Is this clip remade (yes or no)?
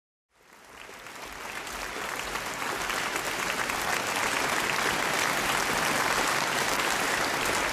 no